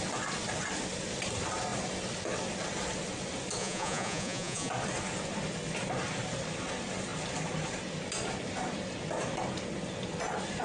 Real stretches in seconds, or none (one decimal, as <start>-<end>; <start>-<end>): 0.0-3.6; 4.7-10.6